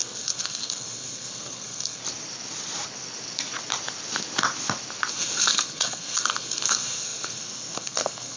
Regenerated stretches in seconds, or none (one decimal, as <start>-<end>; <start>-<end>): 0.0-2.0; 5.1-8.4

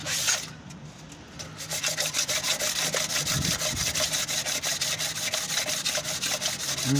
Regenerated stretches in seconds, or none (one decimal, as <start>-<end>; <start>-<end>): none

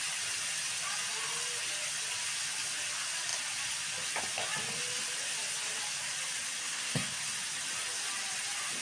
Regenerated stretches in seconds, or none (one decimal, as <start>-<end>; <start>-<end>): 6.6-7.2

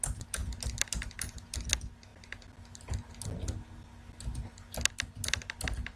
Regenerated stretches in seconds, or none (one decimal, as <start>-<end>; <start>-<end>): none

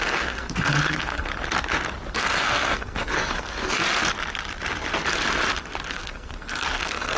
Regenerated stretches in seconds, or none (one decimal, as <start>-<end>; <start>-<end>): 0.0-1.3; 2.1-3.8; 5.9-7.2

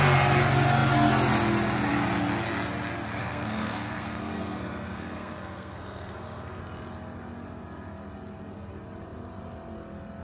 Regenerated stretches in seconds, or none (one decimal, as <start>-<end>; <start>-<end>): 3.2-6.6

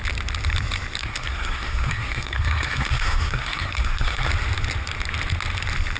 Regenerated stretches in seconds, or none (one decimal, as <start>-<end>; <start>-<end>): 1.0-4.3

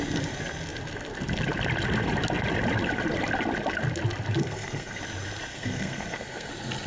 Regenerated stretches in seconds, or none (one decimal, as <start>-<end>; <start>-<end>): 4.4-5.0; 5.5-6.5